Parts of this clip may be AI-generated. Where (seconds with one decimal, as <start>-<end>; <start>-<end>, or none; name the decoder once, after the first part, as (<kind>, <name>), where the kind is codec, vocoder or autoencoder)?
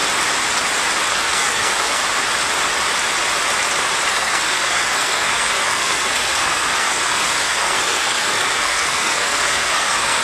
1.1-2.0 (codec, SNAC); 4.1-10.2